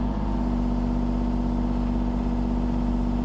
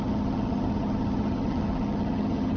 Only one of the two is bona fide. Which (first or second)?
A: first